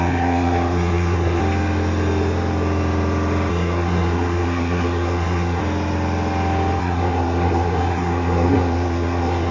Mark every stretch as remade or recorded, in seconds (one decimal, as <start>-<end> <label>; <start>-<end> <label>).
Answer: 0.0-1.4 remade; 1.4-3.5 recorded; 3.5-5.6 remade; 5.6-6.8 recorded; 6.8-9.5 remade